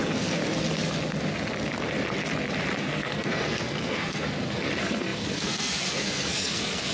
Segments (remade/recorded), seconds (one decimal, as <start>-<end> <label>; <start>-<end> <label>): 0.0-0.4 remade; 0.4-2.8 recorded; 2.8-6.9 remade